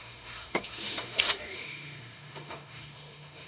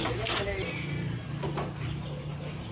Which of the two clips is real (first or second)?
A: second